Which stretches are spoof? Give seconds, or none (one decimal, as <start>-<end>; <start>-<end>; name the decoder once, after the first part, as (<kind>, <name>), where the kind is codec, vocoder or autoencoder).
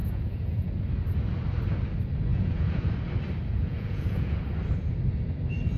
0.0-0.7 (vocoder, Vocos); 2.3-2.9; 3.5-4.4